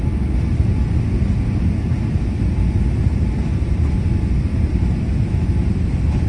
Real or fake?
real